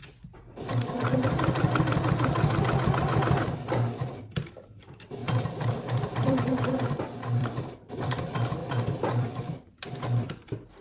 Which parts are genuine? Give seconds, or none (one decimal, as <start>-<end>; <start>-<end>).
0.0-1.1; 2.1-5.2; 6.4-7.4; 8.1-8.6